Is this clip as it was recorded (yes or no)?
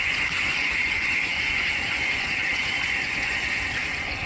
no